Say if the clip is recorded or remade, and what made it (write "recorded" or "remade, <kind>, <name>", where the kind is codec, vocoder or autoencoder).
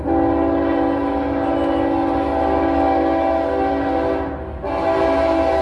recorded